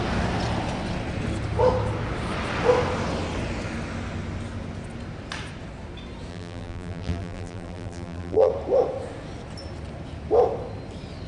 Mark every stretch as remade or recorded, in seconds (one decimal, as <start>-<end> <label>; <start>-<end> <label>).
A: 0.0-6.3 recorded; 6.3-8.5 remade; 8.5-11.3 recorded